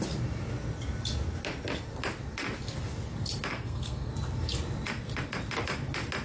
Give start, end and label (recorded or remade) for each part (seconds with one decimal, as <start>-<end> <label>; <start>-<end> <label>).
0.0-3.5 recorded; 3.5-4.1 remade; 4.1-6.2 recorded